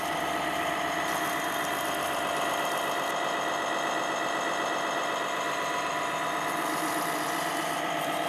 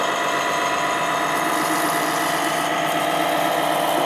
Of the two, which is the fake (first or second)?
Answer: first